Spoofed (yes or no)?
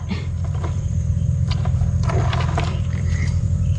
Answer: yes